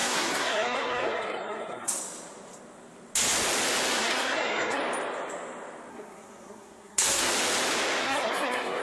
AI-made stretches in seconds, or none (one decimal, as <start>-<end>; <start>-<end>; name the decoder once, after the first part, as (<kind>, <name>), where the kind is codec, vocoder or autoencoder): 0.0-2.0 (codec, SNAC); 3.9-4.8; 5.9-7.3; 8.0-8.8